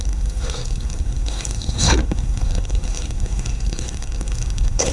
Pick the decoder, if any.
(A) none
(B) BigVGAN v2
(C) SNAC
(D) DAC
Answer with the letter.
C